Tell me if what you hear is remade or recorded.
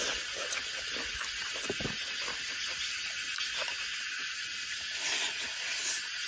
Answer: recorded